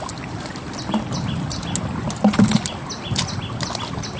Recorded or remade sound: recorded